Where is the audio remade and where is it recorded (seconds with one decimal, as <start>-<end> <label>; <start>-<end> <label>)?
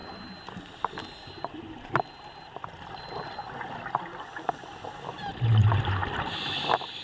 0.0-7.0 recorded